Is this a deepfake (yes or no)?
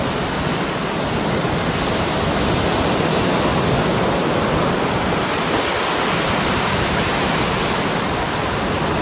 no